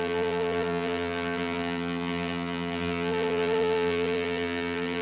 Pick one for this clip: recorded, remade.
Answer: remade